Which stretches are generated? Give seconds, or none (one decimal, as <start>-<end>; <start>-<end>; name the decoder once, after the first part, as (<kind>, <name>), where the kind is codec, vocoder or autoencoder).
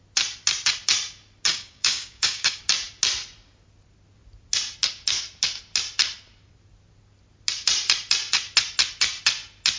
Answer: 1.5-2.6 (codec, DAC)